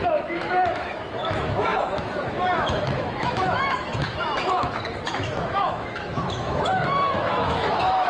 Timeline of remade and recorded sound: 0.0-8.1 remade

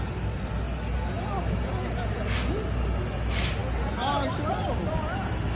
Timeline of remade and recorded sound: 0.0-5.6 recorded

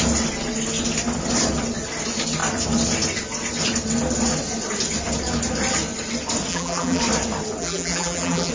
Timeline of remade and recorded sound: 0.0-6.5 recorded; 6.5-7.0 remade; 7.0-7.6 recorded; 7.6-8.5 remade

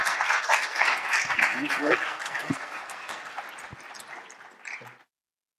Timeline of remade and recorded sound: 0.0-3.4 remade; 3.4-5.6 recorded

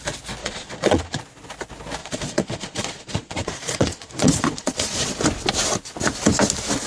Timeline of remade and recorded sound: 0.0-0.4 recorded; 0.4-1.2 remade; 1.2-2.0 recorded; 2.0-5.1 remade; 5.1-6.9 recorded